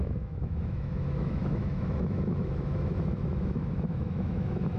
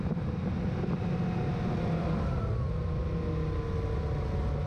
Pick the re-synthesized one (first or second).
first